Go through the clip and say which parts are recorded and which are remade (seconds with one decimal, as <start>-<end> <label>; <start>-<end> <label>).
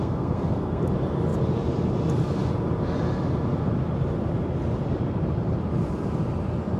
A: 0.0-0.8 remade; 0.8-6.8 recorded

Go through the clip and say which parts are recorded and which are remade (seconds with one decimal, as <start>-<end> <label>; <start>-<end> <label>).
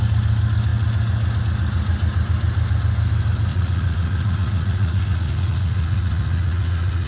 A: 0.0-3.5 recorded; 3.5-7.1 remade